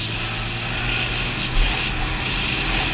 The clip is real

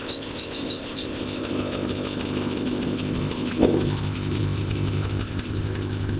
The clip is fake